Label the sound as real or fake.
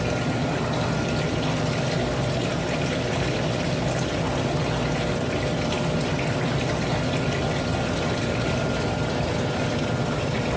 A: real